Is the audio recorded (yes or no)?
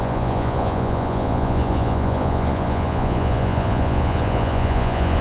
no